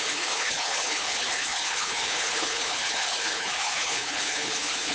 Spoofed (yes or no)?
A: yes